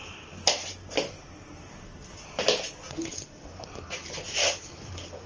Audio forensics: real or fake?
real